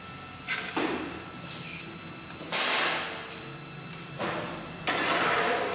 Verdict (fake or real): fake